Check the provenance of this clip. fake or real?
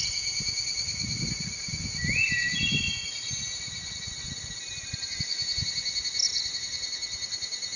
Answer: real